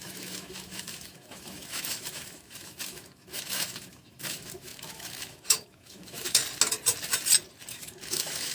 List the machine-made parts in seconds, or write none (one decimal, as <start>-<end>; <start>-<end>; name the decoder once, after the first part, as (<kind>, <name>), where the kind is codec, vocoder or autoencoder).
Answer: 0.0-6.4 (autoencoder, DAC-VAE); 7.7-8.5